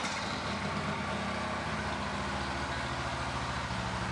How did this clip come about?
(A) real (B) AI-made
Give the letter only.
A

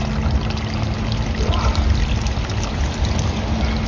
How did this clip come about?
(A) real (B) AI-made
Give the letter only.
A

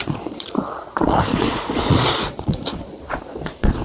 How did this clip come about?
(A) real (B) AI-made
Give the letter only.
B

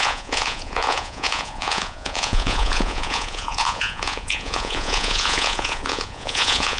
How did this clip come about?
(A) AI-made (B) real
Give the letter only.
A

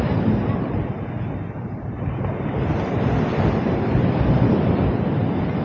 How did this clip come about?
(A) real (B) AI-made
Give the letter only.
A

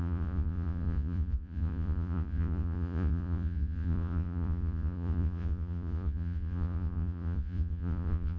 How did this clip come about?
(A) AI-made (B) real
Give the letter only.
A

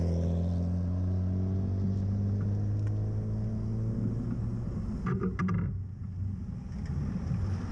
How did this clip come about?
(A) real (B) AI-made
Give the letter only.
A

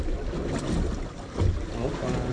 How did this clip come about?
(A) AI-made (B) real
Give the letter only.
B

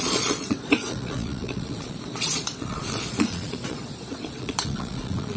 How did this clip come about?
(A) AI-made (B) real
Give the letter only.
A